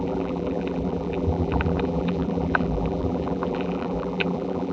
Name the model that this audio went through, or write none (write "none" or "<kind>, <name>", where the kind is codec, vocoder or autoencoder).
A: vocoder, BigVGAN v2